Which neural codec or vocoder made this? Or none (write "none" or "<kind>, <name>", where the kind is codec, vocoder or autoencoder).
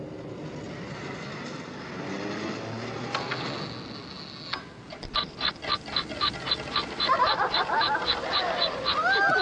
none